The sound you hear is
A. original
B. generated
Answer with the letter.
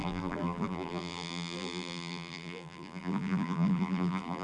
B